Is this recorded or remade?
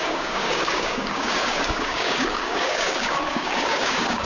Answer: remade